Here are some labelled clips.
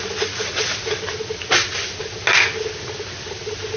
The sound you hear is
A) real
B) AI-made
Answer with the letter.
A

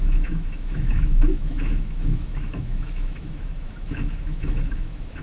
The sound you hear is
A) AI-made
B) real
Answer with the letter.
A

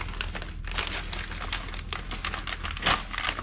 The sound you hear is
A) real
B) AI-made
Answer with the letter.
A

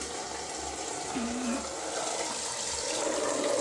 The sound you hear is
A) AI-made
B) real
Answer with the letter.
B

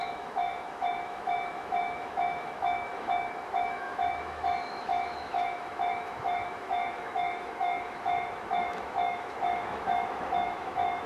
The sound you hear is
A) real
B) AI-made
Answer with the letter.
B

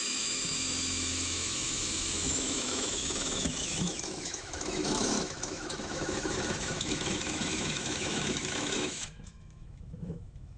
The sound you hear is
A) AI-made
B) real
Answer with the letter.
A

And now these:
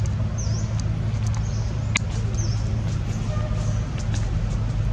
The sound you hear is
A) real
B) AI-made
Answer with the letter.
A